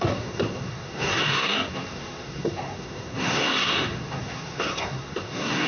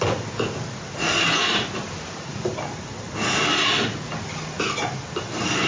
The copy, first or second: first